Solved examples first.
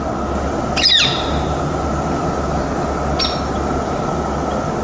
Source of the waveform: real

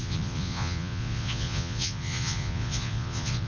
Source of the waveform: fake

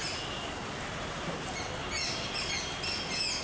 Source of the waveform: real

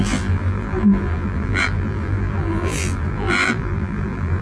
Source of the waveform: fake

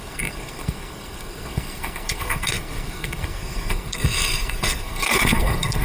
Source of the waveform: fake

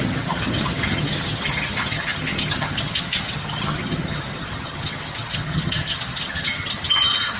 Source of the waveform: fake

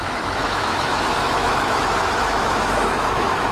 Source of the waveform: fake